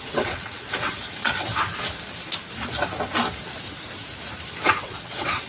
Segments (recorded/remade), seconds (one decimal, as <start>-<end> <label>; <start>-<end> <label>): 0.0-1.5 remade; 1.5-4.8 recorded; 4.8-5.5 remade